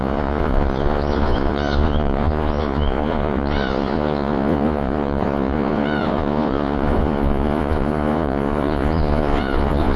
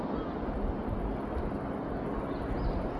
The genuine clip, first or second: second